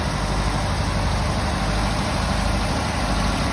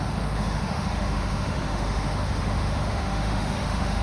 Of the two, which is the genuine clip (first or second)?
first